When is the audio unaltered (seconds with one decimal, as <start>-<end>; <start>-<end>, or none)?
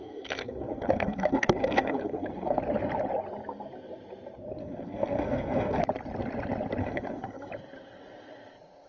2.6-4.6; 5.8-6.8; 7.5-8.9